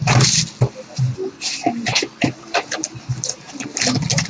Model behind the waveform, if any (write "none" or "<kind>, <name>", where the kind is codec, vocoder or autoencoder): none